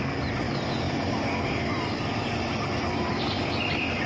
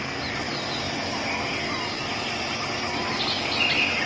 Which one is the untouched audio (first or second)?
second